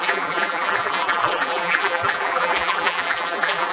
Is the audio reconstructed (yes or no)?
yes